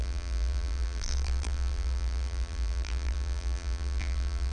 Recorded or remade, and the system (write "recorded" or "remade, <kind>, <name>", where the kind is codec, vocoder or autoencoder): remade, vocoder, BigVGAN v2